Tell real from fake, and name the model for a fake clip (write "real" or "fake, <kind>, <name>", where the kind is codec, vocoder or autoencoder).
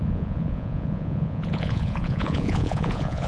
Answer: fake, vocoder, Vocos